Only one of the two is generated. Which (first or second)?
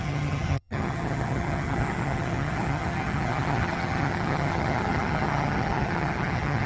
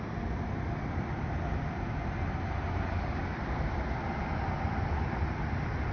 first